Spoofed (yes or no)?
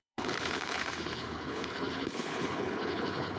yes